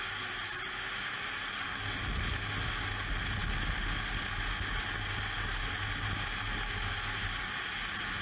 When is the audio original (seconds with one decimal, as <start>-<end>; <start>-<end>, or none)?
0.0-8.2